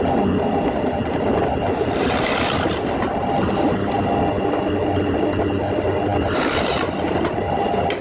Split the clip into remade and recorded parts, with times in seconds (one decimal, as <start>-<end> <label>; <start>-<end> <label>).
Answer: 0.0-8.0 recorded